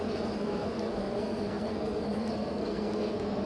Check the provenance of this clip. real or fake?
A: fake